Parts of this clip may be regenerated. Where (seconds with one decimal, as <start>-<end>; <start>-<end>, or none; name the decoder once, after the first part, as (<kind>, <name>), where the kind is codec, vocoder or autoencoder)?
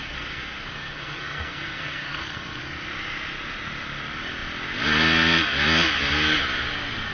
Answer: 0.0-2.6 (codec, SNAC)